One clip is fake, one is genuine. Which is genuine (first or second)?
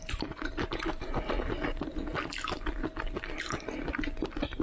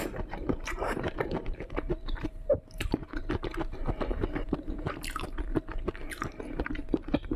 first